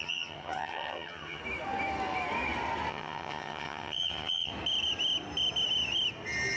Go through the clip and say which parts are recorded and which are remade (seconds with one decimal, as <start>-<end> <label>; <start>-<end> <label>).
0.0-1.4 remade; 1.4-2.9 recorded; 2.9-4.5 remade; 4.5-6.6 recorded